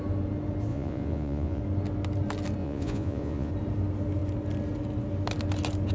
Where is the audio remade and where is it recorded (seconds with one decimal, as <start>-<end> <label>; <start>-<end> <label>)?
0.0-0.7 recorded; 0.7-1.6 remade; 1.6-2.6 recorded; 2.6-3.5 remade; 3.5-5.9 recorded